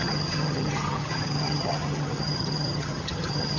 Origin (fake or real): fake